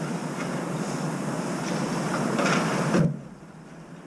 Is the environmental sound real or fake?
real